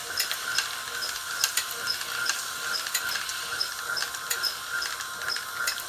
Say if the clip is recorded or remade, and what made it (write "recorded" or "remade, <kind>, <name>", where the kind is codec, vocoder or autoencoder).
recorded